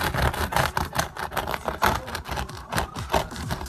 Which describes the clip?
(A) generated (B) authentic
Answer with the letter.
B